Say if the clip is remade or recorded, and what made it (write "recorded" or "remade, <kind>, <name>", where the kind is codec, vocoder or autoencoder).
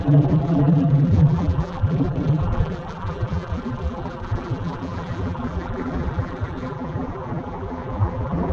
remade, vocoder, BigVGAN v2